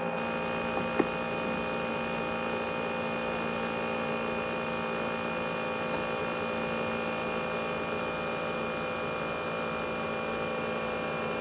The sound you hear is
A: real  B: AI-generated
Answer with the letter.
A